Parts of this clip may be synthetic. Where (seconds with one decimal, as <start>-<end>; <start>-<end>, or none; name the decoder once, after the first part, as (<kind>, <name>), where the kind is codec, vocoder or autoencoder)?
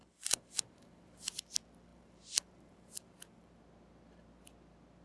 0.0-1.5 (vocoder, BigVGAN v2); 1.9-3.6